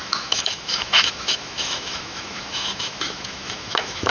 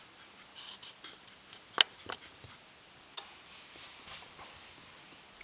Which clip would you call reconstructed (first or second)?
first